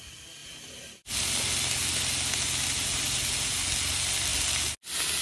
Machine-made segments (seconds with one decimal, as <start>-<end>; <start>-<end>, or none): none